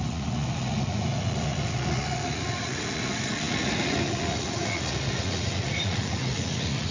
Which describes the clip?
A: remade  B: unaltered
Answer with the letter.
A